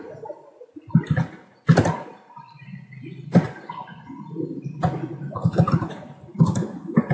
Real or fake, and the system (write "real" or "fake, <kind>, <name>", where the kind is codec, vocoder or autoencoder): fake, vocoder, BigVGAN v2